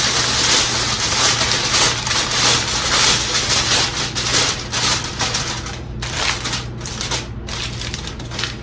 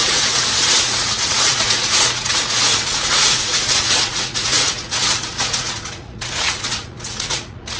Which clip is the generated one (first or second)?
second